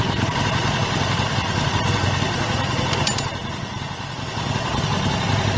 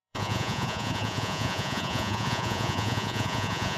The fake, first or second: second